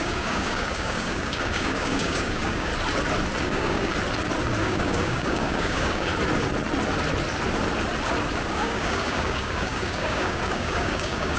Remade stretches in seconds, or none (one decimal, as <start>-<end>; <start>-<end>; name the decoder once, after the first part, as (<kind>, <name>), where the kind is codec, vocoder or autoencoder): 0.0-2.7 (codec, DAC); 3.4-3.9; 4.6-6.1; 8.5-11.4